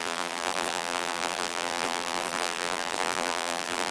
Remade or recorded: remade